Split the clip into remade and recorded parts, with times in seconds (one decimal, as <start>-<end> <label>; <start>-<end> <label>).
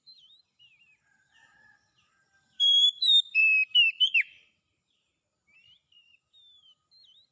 0.0-3.4 remade; 3.4-7.3 recorded